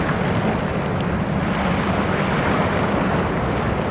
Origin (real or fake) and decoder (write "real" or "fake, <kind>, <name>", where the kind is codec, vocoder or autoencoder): real